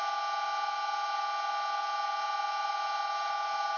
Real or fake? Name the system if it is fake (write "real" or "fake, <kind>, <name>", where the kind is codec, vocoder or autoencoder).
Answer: real